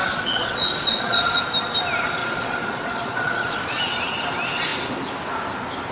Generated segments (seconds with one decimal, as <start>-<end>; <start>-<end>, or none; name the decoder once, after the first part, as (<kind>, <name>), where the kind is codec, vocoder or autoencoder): 0.0-1.4 (vocoder, Vocos); 2.2-3.8